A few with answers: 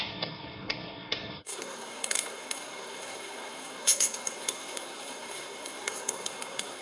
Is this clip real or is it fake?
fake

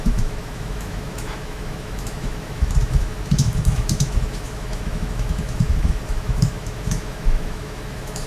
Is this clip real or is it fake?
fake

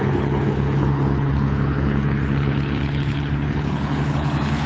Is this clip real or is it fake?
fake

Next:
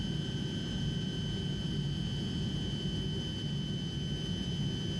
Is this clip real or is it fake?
real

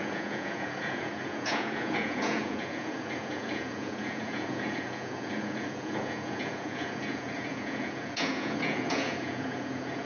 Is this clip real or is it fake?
fake